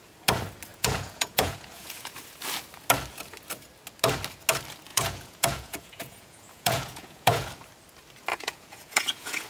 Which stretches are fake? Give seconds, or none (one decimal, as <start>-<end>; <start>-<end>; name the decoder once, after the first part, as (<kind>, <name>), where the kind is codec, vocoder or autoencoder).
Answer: 0.7-2.1 (vocoder, Vocos); 4.9-7.5; 8.3-9.5